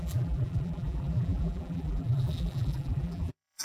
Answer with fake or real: fake